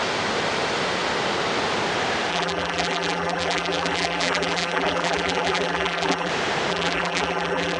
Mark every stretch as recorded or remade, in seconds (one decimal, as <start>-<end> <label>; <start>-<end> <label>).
0.0-2.3 recorded; 2.3-6.3 remade; 6.3-6.7 recorded; 6.7-7.8 remade